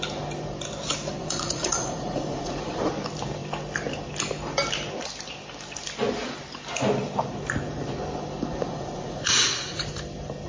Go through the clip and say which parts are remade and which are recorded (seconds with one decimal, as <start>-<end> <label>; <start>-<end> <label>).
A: 0.0-1.2 recorded; 1.2-2.9 remade; 2.9-8.5 recorded; 8.5-10.0 remade; 10.0-10.5 recorded